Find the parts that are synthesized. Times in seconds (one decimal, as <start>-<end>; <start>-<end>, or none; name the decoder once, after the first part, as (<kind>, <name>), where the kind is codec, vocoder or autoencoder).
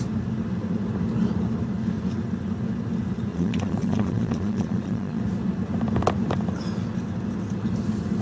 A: 3.3-5.2 (vocoder, Vocos)